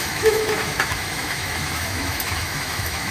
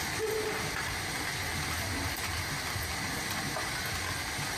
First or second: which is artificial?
first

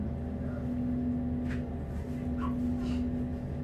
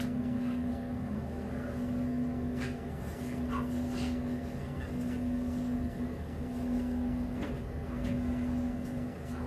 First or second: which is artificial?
second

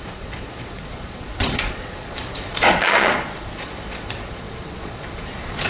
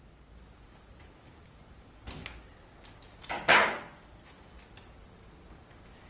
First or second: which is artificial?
first